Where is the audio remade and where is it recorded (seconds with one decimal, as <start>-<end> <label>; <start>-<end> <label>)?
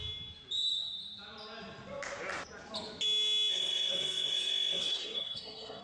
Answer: 0.0-3.5 recorded; 3.5-5.8 remade